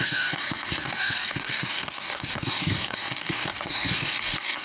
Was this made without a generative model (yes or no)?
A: no